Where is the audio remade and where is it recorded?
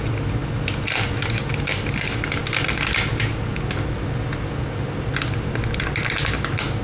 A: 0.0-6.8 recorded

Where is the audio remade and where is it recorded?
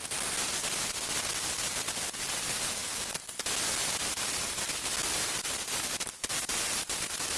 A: 0.0-3.8 recorded; 3.8-4.4 remade; 4.4-5.2 recorded; 5.2-6.3 remade; 6.3-7.4 recorded